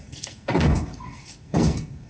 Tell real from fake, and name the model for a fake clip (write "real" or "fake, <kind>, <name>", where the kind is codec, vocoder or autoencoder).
fake, codec, SNAC